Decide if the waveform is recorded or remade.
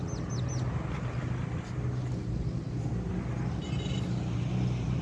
recorded